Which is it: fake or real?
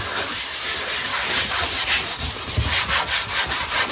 real